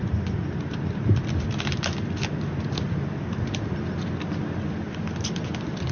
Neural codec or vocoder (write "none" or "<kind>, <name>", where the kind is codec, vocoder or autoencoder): none